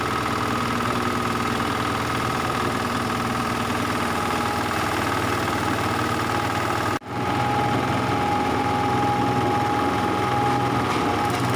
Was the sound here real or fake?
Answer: real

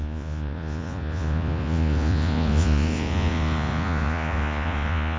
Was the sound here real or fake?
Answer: fake